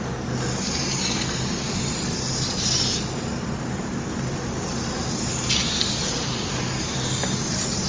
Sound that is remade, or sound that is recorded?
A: recorded